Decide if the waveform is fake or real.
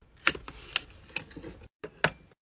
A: real